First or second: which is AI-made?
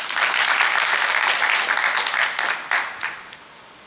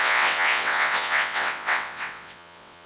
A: second